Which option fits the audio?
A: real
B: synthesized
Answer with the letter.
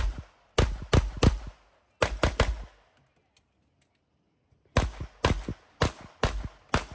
A